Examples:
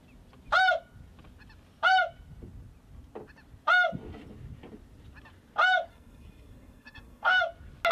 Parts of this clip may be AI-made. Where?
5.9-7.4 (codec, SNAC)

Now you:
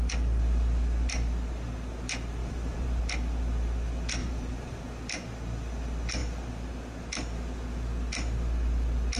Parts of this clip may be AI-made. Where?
2.4-3.0 (vocoder, BigVGAN v2); 4.2-4.8

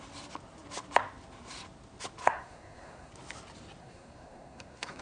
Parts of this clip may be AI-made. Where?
2.2-3.1 (codec, SNAC); 3.8-5.0